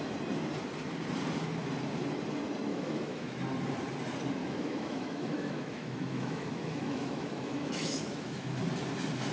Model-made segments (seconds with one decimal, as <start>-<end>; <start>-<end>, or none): 2.7-3.4; 4.4-8.6

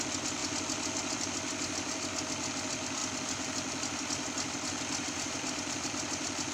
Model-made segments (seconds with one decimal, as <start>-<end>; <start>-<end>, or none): none

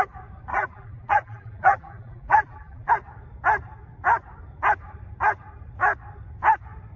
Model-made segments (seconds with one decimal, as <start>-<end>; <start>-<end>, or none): 0.5-2.9

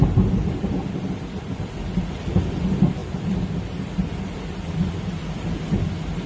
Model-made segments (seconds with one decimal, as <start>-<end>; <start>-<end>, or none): 0.4-2.6; 3.0-5.8